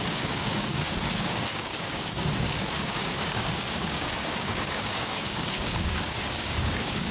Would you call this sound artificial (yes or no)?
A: yes